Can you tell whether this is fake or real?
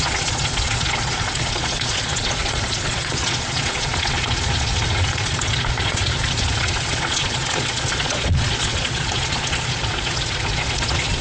fake